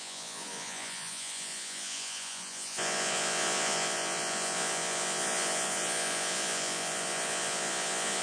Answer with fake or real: fake